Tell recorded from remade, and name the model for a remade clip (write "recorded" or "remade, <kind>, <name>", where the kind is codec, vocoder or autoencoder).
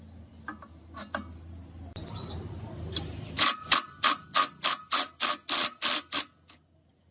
recorded